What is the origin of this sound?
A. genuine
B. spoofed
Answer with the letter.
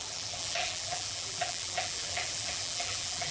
B